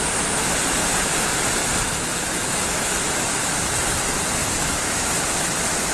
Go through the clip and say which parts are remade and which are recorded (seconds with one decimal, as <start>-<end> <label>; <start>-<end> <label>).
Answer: 0.0-1.6 recorded; 1.6-3.6 remade; 3.6-4.4 recorded; 4.4-5.9 remade